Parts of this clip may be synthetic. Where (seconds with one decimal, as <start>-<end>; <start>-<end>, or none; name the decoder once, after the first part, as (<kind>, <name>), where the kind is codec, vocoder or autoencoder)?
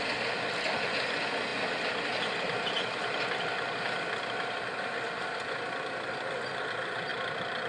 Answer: none